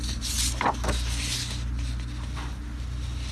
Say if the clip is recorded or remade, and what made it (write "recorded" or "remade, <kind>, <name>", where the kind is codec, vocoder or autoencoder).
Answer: recorded